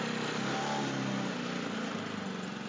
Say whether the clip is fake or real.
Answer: real